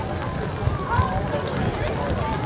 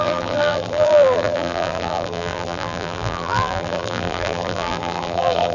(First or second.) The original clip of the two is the first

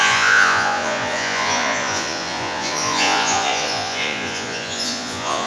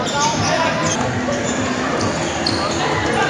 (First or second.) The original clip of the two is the second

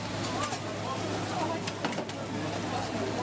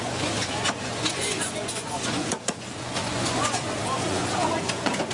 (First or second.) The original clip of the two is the first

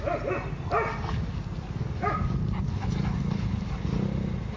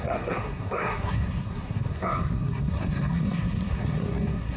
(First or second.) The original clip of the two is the first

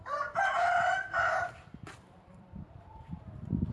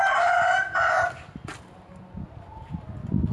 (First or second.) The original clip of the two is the second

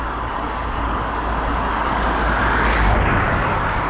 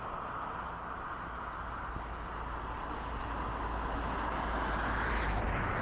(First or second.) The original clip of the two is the second